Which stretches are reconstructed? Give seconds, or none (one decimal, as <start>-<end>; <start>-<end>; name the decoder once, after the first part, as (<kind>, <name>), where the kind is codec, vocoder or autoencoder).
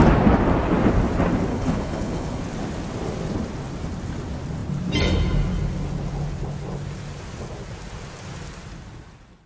1.5-2.4 (codec, HILCodec)